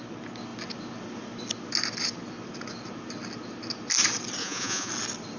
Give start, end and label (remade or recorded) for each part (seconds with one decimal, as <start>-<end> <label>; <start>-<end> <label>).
0.0-4.4 recorded; 4.4-4.9 remade; 4.9-5.4 recorded